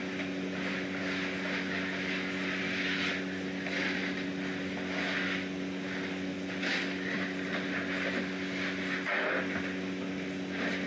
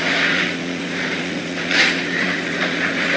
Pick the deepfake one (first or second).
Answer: second